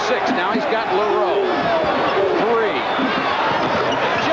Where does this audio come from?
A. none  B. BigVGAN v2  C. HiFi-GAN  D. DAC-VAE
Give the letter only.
A